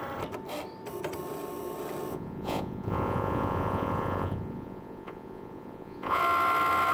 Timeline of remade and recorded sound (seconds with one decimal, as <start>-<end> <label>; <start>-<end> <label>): 0.0-2.1 recorded; 2.1-6.2 remade; 6.2-6.9 recorded